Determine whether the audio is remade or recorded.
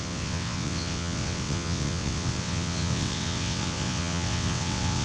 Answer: remade